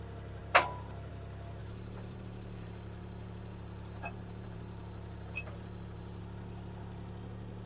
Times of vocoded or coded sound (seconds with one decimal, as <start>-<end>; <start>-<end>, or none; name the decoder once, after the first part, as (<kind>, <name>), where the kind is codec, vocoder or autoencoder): 1.6-6.2 (vocoder, BigVGAN v2)